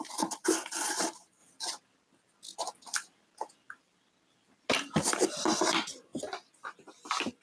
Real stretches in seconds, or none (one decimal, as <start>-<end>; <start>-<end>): 1.4-4.7; 6.1-7.4